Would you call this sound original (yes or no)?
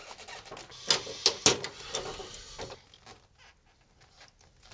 yes